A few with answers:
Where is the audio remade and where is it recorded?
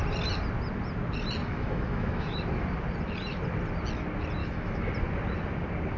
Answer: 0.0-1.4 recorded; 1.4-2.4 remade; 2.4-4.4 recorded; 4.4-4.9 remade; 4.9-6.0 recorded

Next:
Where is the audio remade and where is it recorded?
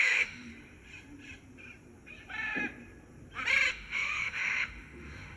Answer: 0.0-0.5 remade; 0.5-3.7 recorded; 3.7-5.4 remade